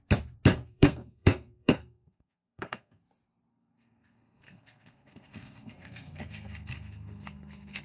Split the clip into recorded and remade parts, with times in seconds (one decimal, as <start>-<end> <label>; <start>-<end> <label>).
0.0-0.5 recorded; 0.5-3.0 remade; 3.0-3.5 recorded; 3.5-7.8 remade